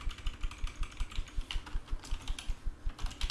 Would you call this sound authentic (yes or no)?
yes